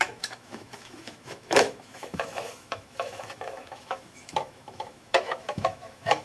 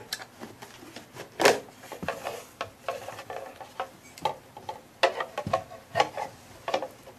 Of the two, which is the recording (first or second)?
second